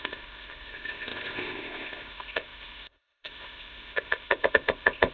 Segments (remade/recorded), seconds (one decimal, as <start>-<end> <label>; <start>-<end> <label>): 0.0-5.1 remade